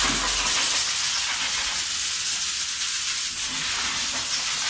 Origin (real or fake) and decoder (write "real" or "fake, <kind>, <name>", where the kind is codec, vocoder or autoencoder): real